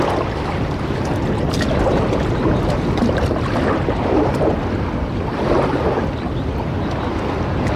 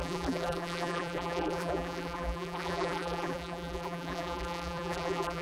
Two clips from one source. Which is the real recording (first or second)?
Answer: first